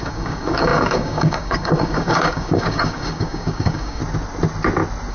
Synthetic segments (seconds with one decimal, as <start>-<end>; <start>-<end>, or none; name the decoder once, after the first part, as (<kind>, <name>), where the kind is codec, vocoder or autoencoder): 0.0-4.0 (codec, DAC)